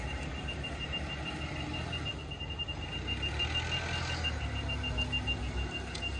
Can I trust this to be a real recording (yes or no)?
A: yes